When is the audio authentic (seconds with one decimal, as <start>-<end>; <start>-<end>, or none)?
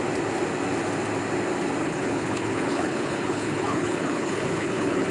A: 0.0-1.8